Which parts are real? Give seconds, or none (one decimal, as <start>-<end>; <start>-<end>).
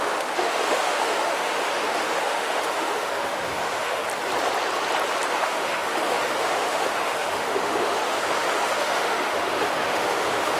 4.0-5.3